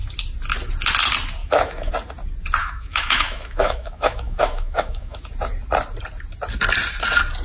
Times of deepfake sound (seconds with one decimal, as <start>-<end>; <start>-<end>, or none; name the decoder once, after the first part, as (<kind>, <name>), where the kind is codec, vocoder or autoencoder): 1.4-1.9 (autoencoder, DAC-VAE); 2.6-5.2